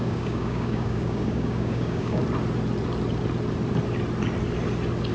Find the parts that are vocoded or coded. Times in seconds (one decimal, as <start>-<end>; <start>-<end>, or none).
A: 0.0-2.2